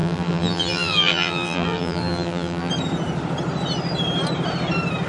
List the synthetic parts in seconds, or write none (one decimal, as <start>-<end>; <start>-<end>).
0.0-2.7